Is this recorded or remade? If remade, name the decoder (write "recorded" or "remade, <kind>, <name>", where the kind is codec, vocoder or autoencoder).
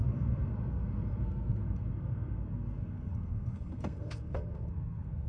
remade, codec, SNAC